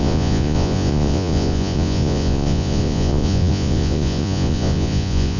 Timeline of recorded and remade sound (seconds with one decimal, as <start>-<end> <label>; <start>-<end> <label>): 0.0-5.4 remade